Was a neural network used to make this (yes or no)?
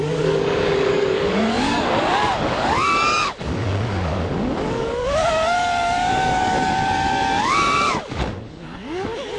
yes